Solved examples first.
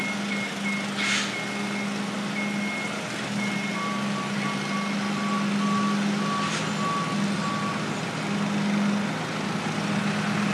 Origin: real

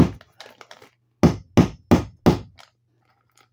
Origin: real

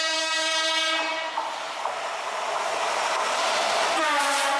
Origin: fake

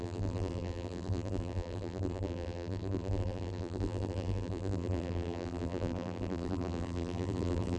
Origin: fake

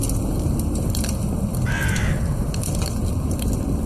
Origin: real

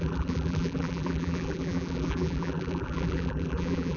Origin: fake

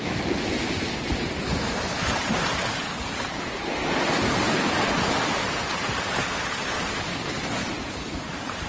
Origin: fake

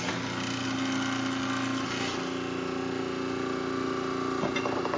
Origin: real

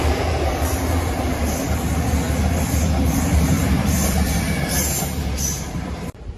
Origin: fake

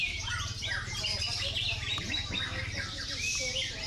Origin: fake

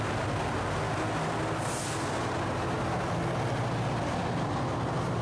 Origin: real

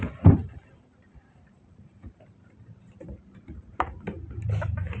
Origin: fake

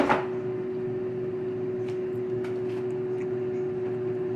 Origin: real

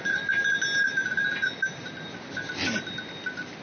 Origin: real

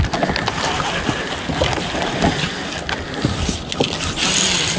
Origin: real